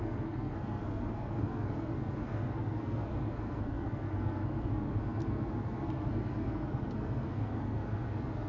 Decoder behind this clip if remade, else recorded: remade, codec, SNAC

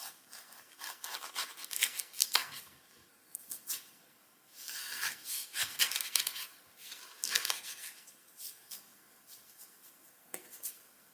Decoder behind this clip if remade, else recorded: remade, codec, SNAC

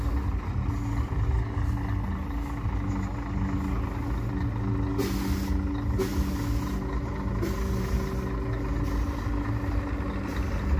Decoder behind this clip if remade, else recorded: recorded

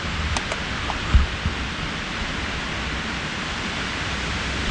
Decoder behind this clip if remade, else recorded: recorded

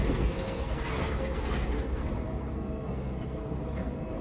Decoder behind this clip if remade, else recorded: remade, codec, SNAC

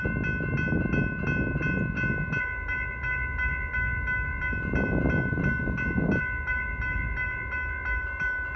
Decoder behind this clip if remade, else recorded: recorded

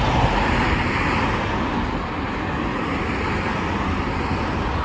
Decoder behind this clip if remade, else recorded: recorded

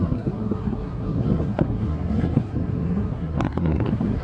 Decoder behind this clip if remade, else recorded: remade, codec, SNAC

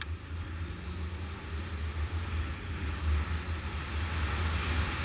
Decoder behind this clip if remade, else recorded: recorded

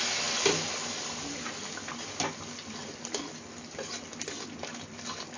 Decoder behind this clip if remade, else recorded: recorded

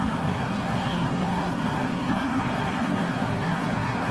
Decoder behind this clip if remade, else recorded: remade, codec, SNAC